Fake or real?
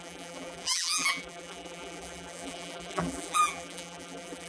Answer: fake